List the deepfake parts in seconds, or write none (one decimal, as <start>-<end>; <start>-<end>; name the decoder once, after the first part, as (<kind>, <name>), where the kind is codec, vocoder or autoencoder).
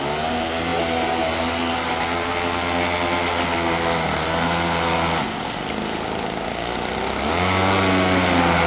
none